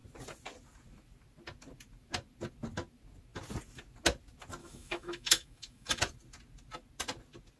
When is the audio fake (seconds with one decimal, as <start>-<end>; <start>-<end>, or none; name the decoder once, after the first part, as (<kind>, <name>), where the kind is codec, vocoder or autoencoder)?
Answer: 4.6-6.0 (autoencoder, DAC-VAE)